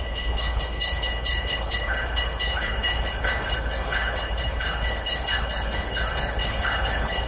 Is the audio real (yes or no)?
no